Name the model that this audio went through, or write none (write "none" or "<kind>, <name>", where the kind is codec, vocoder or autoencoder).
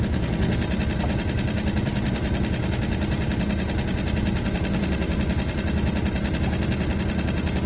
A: none